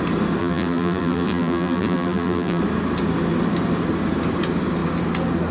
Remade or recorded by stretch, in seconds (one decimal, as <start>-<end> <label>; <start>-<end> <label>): 0.0-0.4 recorded; 0.4-2.6 remade; 2.6-5.5 recorded